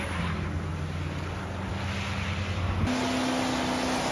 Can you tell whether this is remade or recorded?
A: recorded